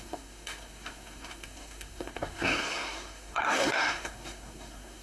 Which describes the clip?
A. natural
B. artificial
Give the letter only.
B